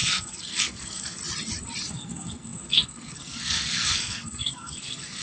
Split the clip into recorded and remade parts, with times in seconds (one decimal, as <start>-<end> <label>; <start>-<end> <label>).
0.0-1.2 remade; 1.2-1.9 recorded; 1.9-5.2 remade